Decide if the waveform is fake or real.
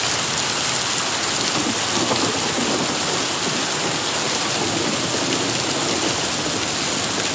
real